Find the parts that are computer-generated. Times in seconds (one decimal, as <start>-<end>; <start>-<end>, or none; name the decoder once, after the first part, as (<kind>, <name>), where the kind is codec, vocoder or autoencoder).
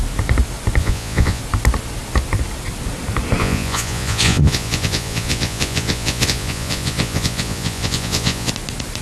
0.8-1.4 (vocoder, Vocos); 3.4-8.5